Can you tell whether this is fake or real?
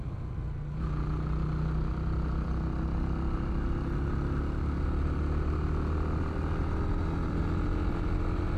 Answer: real